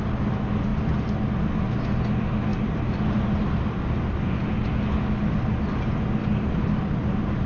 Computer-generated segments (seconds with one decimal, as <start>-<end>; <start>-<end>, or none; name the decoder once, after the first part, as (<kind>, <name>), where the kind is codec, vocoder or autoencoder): 0.7-1.3 (vocoder, BigVGAN v2); 6.2-6.9

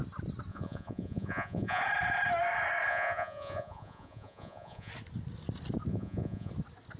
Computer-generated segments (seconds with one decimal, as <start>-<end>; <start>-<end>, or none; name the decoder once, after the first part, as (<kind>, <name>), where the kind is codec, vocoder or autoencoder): 0.5-1.8 (vocoder, Vocos); 2.9-4.9; 5.9-6.5